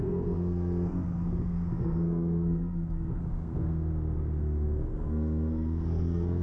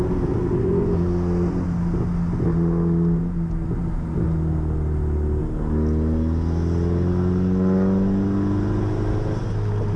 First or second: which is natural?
second